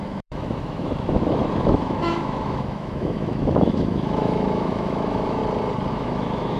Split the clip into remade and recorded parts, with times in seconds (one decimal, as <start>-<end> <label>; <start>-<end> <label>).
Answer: 0.0-5.4 remade; 5.4-5.9 recorded; 5.9-6.6 remade